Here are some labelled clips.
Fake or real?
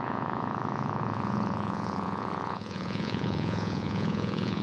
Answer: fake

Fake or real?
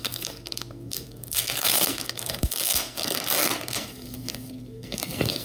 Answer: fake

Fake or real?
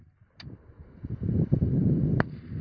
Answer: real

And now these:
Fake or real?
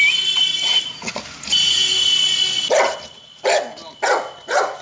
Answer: real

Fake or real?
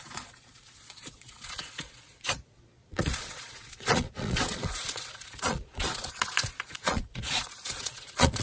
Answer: fake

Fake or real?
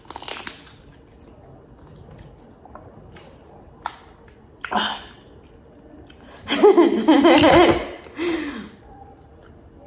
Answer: real